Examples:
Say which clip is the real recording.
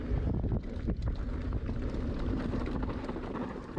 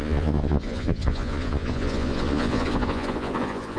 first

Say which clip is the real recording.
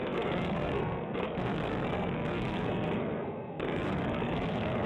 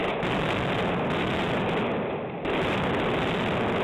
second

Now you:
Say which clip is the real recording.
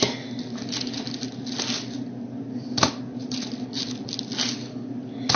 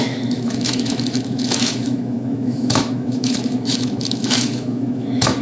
first